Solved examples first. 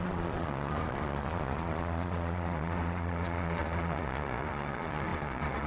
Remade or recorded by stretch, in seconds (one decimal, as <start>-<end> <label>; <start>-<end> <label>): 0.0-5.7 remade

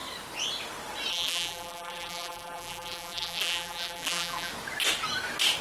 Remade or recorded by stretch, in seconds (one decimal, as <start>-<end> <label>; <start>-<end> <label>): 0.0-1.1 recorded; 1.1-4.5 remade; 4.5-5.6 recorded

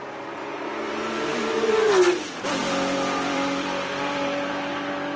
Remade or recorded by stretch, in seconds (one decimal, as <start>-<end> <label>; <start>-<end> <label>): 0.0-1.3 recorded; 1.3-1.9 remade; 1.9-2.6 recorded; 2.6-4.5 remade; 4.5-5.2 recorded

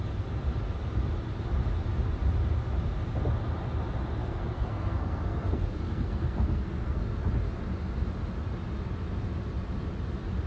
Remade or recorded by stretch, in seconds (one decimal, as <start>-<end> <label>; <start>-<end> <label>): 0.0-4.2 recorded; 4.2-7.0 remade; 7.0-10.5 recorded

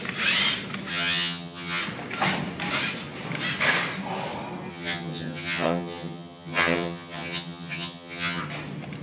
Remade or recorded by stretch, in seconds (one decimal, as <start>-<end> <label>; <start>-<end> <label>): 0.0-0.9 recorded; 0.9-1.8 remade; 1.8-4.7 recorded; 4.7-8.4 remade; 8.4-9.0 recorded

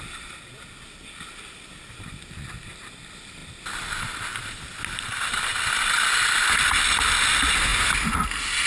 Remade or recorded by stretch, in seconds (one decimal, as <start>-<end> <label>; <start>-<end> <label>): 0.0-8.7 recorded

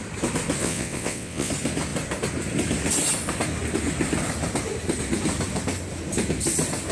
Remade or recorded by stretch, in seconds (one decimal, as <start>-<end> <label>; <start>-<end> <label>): 0.0-0.6 recorded; 0.6-1.5 remade; 1.5-6.9 recorded

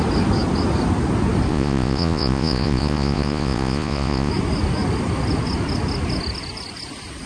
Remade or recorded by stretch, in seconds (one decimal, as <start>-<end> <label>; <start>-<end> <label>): 0.0-1.5 recorded; 1.5-4.3 remade; 4.3-7.3 recorded